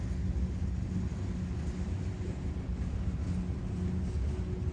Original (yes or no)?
yes